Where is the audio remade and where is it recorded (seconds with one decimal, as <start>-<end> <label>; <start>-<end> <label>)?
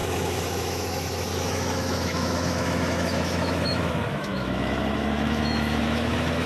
0.0-6.5 remade